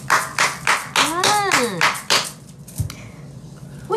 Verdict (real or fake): real